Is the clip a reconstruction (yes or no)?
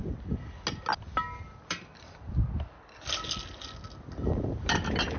no